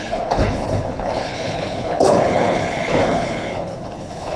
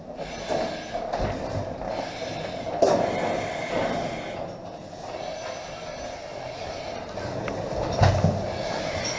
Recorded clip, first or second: second